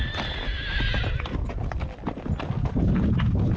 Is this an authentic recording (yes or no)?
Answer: yes